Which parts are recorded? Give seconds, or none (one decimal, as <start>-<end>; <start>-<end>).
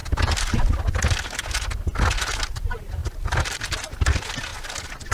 0.0-3.0; 3.6-5.1